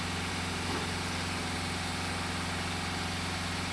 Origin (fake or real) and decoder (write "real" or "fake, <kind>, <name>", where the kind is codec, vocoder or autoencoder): real